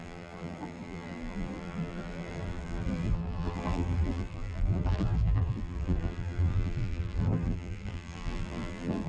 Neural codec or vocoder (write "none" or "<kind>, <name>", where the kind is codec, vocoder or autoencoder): vocoder, BigVGAN v2